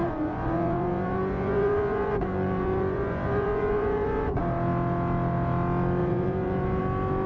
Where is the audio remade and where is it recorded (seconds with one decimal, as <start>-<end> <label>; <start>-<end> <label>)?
0.0-4.4 remade; 4.4-6.0 recorded; 6.0-6.8 remade; 6.8-7.3 recorded